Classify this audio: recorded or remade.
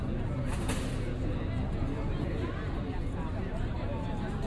recorded